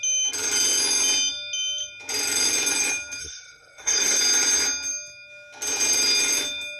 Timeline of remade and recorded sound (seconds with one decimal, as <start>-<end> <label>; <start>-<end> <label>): 0.0-3.2 recorded; 3.2-4.2 remade; 4.2-6.8 recorded